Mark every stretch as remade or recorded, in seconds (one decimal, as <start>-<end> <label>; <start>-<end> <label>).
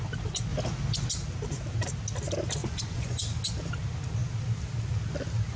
0.0-2.6 recorded; 2.6-3.2 remade; 3.2-5.6 recorded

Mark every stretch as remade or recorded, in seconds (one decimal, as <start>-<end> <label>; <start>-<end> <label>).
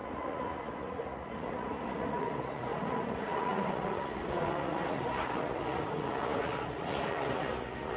0.0-8.0 remade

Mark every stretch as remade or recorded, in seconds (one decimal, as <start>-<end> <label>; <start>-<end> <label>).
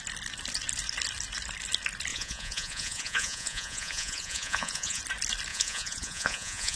0.0-2.1 recorded; 2.1-5.0 remade; 5.0-5.5 recorded; 5.5-6.8 remade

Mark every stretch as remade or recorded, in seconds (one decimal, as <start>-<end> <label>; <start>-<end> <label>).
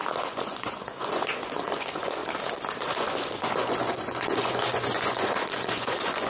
0.0-2.2 remade; 2.2-2.8 recorded; 2.8-6.3 remade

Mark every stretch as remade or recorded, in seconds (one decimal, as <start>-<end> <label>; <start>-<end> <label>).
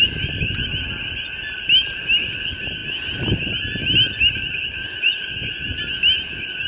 0.0-6.7 recorded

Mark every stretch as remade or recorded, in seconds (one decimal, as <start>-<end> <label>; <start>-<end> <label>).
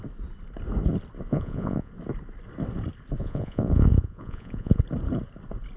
0.0-1.3 recorded; 1.3-1.9 remade; 1.9-3.2 recorded; 3.2-4.8 remade; 4.8-5.8 recorded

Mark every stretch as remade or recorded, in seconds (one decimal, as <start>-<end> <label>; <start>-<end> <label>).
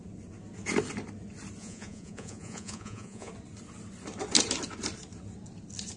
0.0-1.6 recorded; 1.6-3.3 remade; 3.3-6.0 recorded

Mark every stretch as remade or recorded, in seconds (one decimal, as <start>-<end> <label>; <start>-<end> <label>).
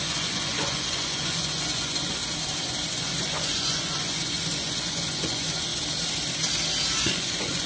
0.0-2.2 remade; 2.2-2.9 recorded; 2.9-5.7 remade; 5.7-7.0 recorded; 7.0-7.7 remade